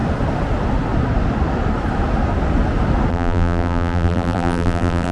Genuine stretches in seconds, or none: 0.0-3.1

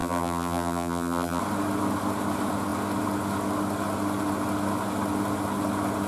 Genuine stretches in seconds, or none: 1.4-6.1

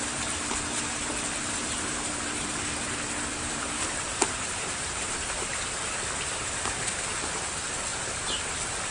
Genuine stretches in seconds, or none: 0.0-1.6; 2.4-3.3; 5.8-8.9

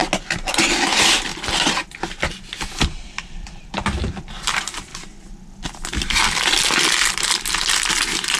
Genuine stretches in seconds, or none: 0.0-0.5; 1.3-3.0; 4.9-7.1

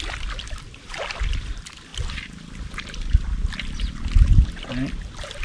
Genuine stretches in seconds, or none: 1.9-4.7

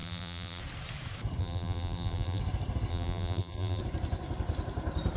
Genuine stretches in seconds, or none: 0.6-1.4; 2.4-2.9; 3.8-5.2